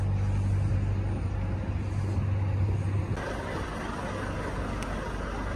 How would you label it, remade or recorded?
recorded